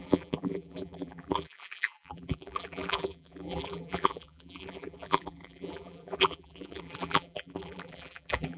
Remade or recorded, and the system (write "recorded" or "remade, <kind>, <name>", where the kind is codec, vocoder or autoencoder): remade, vocoder, BigVGAN v2